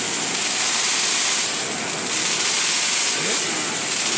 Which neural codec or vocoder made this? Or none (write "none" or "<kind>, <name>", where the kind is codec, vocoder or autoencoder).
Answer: none